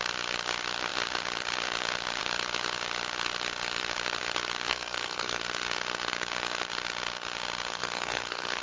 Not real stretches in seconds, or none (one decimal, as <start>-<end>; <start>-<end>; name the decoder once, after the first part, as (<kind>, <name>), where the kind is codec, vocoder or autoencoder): 4.7-5.4 (codec, SNAC); 7.7-8.6